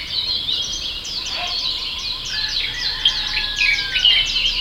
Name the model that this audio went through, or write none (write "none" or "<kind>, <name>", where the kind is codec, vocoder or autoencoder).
none